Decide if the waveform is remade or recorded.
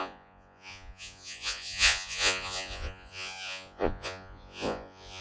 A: remade